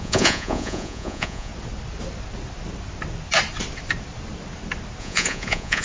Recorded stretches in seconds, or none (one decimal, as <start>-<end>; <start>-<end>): 1.5-5.0